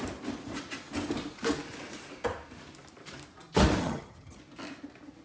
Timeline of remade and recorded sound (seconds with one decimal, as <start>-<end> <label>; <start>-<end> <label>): 0.0-3.8 recorded; 3.8-4.4 remade; 4.4-5.2 recorded